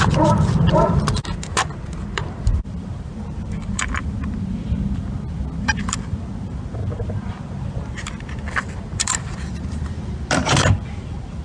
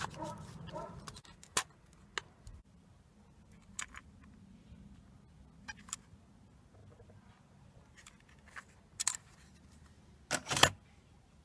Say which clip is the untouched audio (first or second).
second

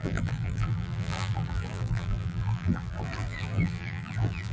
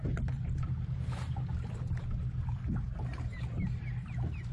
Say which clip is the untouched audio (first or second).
second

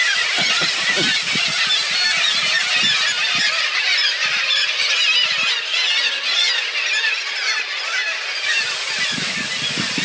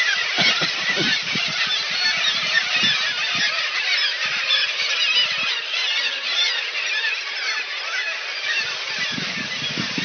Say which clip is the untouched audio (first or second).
first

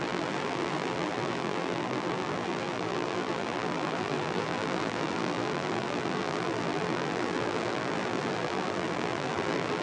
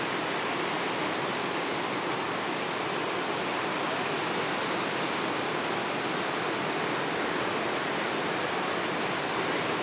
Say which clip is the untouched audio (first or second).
second